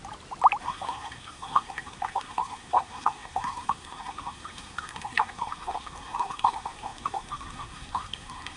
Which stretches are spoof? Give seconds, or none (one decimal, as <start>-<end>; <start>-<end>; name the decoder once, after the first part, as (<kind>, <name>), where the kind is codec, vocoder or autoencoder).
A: 0.6-8.6 (codec, SNAC)